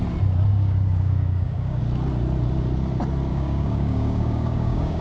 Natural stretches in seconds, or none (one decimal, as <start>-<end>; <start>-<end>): 0.0-0.5; 1.8-3.3